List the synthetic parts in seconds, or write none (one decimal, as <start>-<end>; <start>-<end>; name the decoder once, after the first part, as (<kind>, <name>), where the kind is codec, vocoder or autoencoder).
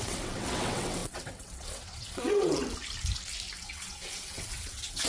0.0-2.6 (vocoder, WaveNeXt); 3.6-5.1